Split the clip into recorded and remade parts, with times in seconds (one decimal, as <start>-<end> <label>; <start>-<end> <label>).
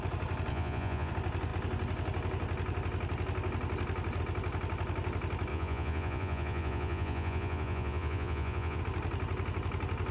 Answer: 0.0-0.5 recorded; 0.5-1.1 remade; 1.1-5.5 recorded; 5.5-8.8 remade; 8.8-10.1 recorded